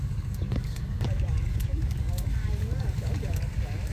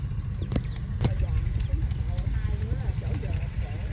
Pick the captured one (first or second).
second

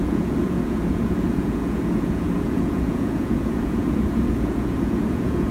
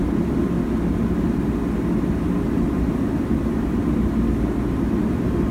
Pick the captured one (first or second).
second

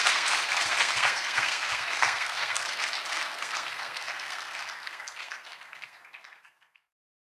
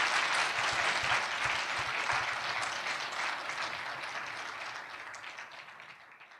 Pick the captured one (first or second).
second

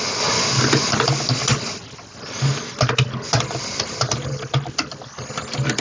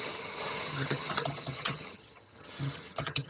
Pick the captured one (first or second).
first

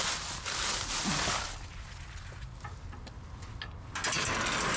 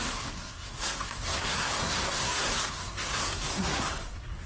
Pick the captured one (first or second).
first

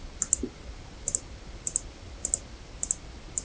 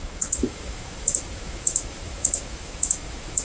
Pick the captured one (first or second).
first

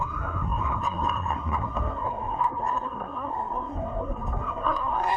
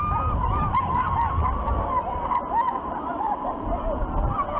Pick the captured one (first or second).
second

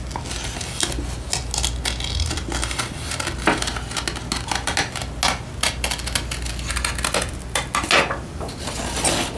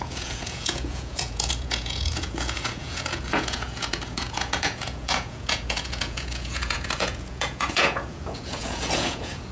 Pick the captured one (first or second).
first